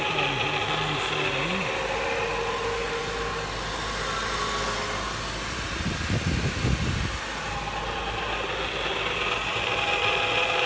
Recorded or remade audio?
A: recorded